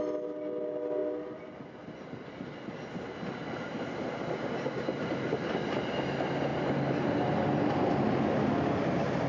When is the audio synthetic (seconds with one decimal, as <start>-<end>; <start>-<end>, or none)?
6.5-7.3